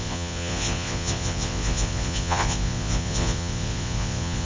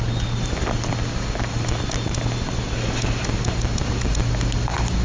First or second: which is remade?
first